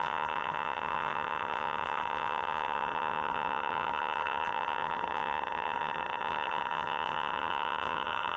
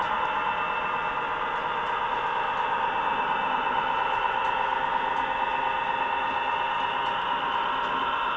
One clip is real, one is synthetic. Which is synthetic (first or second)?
first